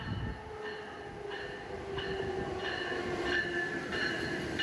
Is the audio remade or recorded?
recorded